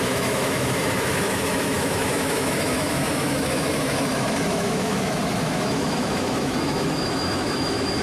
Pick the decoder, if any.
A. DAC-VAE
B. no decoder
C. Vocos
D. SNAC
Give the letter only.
A